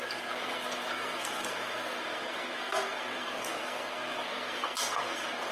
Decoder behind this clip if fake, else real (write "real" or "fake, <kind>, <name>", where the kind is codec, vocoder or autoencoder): fake, codec, SNAC